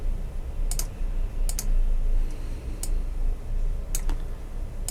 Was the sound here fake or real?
real